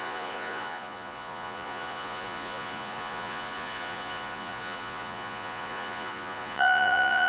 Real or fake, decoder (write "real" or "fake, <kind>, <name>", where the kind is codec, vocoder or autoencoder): fake, vocoder, Vocos